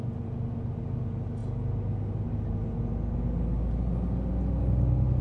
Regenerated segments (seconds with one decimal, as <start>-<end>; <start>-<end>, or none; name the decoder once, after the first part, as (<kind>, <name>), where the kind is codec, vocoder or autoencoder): none